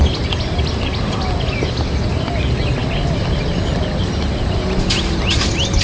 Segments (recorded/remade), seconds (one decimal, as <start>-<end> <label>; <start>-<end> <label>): 0.0-5.8 recorded